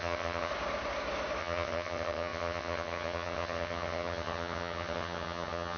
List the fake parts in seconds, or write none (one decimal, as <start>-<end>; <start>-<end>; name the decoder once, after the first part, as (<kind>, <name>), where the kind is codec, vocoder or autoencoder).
0.0-0.5 (vocoder, HiFi-GAN); 1.4-5.8